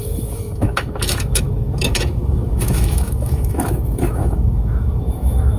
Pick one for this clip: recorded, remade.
remade